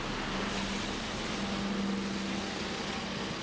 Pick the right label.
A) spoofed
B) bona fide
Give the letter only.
B